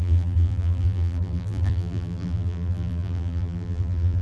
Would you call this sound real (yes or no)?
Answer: no